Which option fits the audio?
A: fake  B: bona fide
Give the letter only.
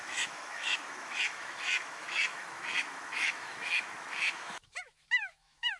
A